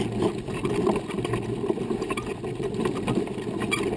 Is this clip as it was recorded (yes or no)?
no